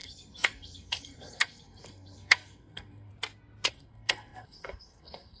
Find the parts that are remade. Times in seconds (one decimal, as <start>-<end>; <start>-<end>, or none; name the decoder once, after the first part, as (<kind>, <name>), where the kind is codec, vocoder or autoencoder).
0.0-3.1 (codec, SNAC); 3.7-5.4